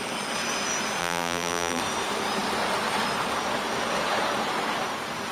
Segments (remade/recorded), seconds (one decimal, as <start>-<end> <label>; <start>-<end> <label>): 0.0-1.0 recorded; 1.0-1.8 remade; 1.8-5.3 recorded